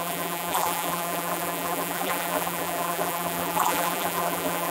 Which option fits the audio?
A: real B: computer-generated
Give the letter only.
B